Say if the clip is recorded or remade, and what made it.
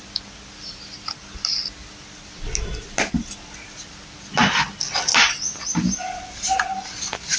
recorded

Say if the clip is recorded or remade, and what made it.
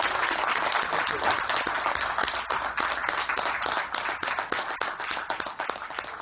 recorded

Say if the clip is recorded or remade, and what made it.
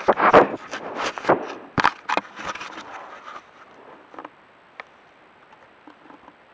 recorded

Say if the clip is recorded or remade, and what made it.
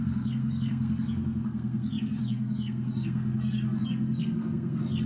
remade, codec, SNAC